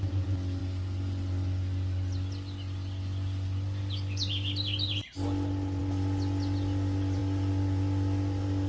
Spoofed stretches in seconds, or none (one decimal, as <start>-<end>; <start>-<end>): none